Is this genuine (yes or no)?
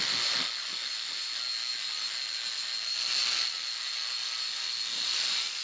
yes